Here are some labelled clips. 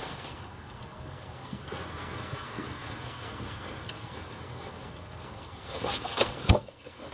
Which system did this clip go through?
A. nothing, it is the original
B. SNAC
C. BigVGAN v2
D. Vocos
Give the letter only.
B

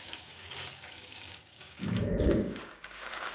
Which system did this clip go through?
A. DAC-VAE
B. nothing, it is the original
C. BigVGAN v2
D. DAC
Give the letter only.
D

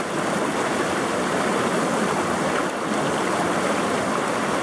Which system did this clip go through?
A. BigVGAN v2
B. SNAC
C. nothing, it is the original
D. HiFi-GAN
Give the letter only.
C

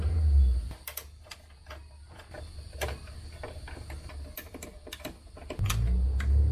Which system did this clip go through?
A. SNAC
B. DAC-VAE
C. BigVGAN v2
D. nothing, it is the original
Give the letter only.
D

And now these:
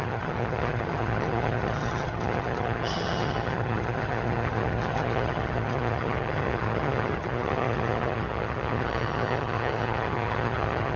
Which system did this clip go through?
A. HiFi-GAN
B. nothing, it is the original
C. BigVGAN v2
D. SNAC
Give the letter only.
A